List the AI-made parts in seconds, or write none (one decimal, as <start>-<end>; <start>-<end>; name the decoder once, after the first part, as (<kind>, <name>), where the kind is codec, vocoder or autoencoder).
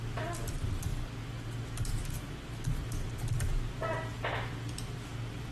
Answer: none